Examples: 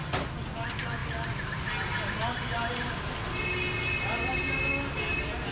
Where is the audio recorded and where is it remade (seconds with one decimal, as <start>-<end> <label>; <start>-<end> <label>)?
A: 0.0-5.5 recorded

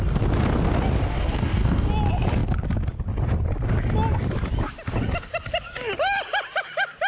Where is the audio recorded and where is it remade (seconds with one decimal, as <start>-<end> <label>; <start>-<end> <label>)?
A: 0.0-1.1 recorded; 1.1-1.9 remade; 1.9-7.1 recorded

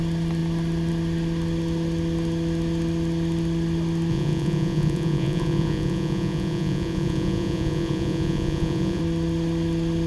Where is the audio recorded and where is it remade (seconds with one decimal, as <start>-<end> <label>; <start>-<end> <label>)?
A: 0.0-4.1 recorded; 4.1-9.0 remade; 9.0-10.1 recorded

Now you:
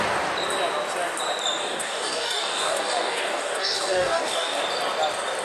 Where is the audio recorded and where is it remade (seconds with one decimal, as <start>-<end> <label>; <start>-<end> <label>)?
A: 0.0-1.6 recorded; 1.6-4.6 remade; 4.6-5.4 recorded